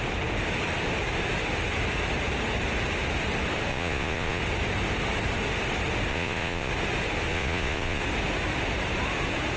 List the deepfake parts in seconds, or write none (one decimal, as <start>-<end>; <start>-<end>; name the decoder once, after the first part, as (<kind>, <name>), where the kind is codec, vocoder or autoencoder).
3.7-4.4 (vocoder, Vocos); 6.1-6.7; 7.3-8.0